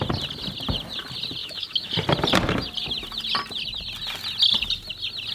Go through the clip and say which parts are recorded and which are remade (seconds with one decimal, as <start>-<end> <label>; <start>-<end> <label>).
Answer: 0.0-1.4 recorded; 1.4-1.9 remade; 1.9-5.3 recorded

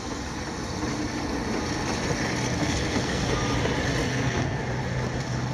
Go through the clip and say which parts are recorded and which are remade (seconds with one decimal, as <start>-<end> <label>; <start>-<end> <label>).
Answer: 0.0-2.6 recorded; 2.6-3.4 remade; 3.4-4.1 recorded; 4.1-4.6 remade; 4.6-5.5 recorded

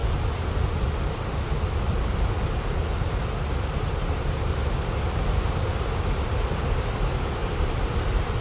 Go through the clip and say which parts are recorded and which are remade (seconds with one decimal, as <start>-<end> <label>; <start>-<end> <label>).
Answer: 0.0-3.7 recorded; 3.7-4.6 remade; 4.6-5.8 recorded; 5.8-8.4 remade

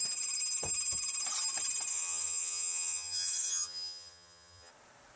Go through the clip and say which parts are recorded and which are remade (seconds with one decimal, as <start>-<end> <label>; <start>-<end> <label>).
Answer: 0.0-1.9 recorded; 1.9-4.7 remade; 4.7-5.2 recorded

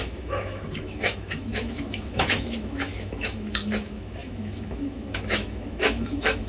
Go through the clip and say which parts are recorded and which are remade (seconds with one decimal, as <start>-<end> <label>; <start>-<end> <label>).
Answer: 0.0-6.5 remade